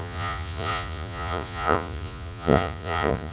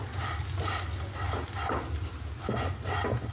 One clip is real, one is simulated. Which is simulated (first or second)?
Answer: first